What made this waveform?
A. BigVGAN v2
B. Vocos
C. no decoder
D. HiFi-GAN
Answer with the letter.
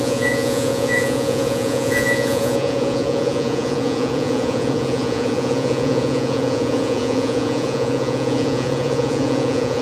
B